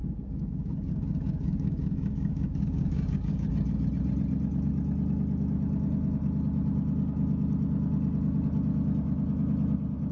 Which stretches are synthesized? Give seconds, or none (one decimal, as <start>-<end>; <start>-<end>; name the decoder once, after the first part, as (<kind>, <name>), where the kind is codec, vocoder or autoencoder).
0.0-3.5 (codec, DAC)